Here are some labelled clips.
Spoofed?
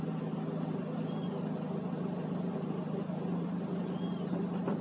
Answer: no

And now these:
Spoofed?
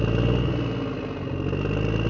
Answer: no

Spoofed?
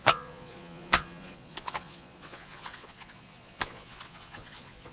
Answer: yes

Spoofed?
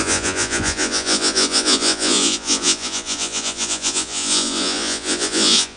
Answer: yes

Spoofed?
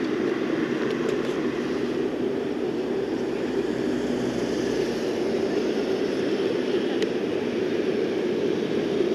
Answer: no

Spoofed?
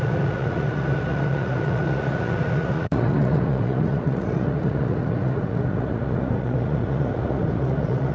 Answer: yes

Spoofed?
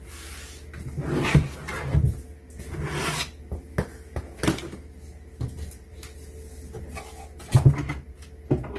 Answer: no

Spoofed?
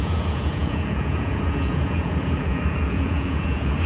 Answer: yes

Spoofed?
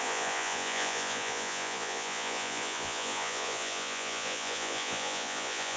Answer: yes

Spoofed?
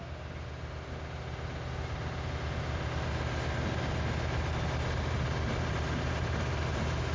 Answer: no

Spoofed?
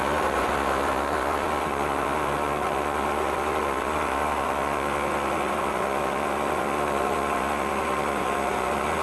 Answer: yes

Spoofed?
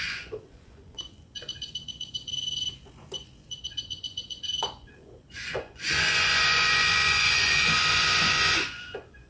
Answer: yes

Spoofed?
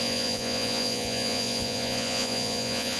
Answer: yes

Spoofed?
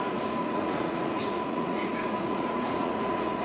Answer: yes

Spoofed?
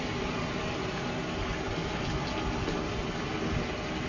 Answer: no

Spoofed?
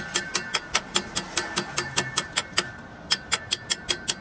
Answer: no